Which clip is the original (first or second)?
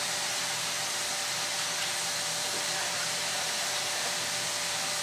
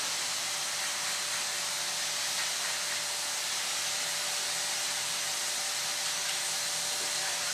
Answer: second